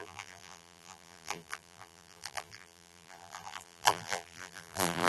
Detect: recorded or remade remade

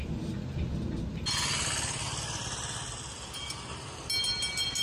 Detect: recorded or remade recorded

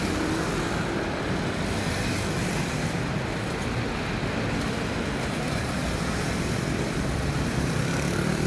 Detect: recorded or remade remade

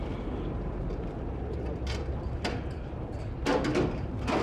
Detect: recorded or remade recorded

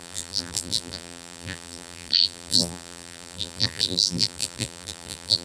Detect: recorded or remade remade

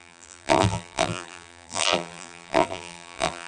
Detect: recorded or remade remade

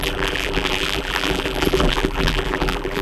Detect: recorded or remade remade